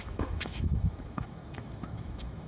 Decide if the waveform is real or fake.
fake